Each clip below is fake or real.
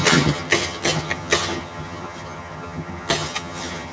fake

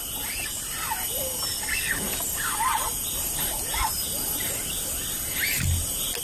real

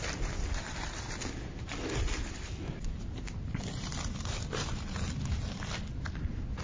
real